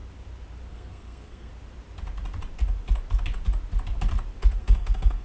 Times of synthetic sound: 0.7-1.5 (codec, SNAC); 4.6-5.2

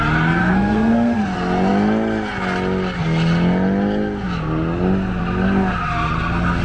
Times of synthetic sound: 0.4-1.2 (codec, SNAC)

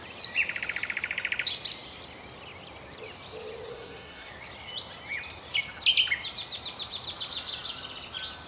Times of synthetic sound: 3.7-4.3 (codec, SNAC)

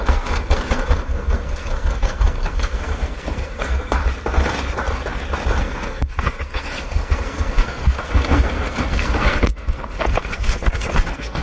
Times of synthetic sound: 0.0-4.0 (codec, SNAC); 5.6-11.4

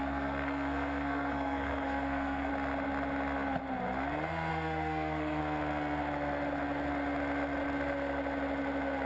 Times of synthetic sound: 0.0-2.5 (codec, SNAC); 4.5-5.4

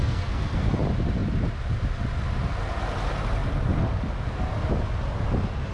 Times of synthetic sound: 0.0-0.7 (codec, SNAC)

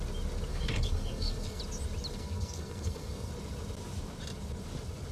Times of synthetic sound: 0.5-1.6 (codec, SNAC); 2.1-3.3

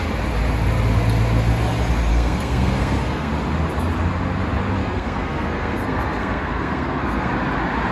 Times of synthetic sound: 2.1-3.3 (codec, SNAC); 4.8-7.3